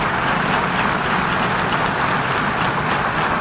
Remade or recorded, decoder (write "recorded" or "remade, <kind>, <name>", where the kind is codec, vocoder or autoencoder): recorded